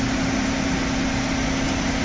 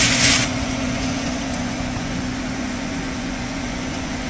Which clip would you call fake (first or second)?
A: second